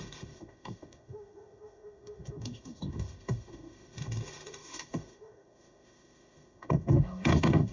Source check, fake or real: fake